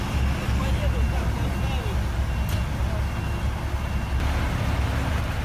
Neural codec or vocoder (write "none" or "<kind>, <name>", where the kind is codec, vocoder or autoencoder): none